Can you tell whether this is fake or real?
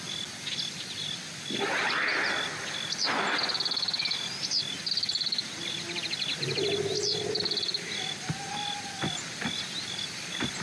real